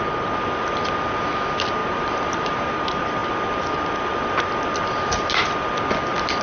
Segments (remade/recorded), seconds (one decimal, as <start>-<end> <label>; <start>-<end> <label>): 0.0-1.8 recorded; 1.8-2.8 remade; 2.8-6.4 recorded